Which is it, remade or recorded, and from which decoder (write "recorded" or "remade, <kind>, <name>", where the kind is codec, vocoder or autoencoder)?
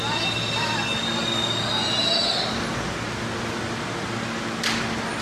recorded